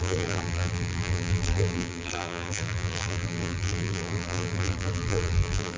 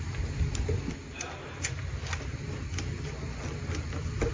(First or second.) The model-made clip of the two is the first